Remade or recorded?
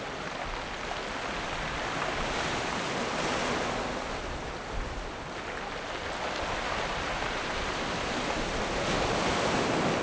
recorded